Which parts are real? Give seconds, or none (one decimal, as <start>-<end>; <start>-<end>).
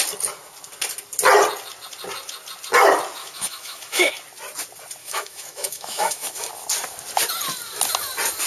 0.0-3.2; 4.1-5.0; 6.5-8.5